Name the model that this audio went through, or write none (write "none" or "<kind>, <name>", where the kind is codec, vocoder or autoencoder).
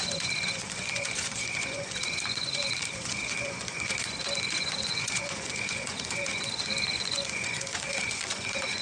vocoder, Vocos